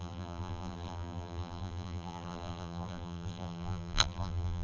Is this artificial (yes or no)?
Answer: yes